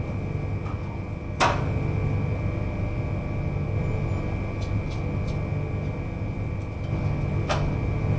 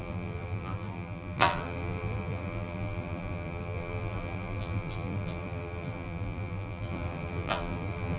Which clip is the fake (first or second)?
second